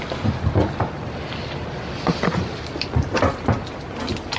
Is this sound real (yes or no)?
yes